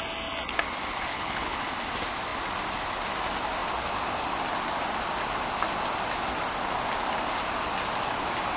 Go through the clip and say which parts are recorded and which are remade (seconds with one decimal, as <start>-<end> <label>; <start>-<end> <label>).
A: 0.0-1.1 recorded; 1.1-1.6 remade; 1.6-8.6 recorded